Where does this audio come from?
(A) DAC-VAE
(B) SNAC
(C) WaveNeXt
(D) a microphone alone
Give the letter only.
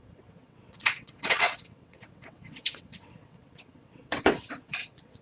C